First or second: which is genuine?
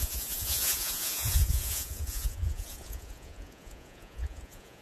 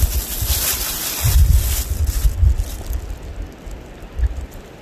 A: second